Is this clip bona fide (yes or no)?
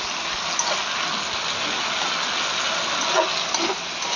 yes